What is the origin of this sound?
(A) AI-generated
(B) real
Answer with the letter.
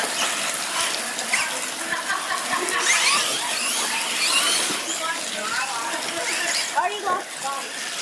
B